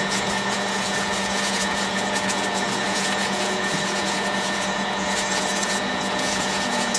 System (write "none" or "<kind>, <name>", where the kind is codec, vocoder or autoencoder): vocoder, Vocos